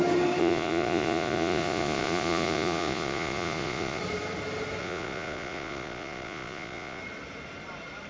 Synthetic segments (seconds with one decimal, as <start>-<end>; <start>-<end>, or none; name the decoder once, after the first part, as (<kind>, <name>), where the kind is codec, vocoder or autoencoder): 0.4-4.0 (vocoder, Vocos); 4.8-7.0